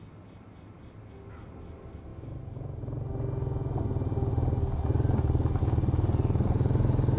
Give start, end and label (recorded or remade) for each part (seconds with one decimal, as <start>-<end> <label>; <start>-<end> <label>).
0.0-7.2 recorded